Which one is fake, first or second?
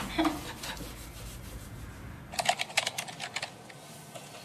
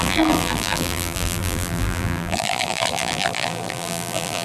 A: second